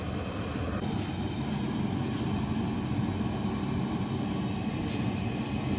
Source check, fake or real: real